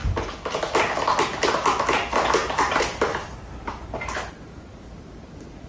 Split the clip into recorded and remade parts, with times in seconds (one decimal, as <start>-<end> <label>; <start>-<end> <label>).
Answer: 0.0-2.4 recorded; 2.4-4.3 remade; 4.3-5.7 recorded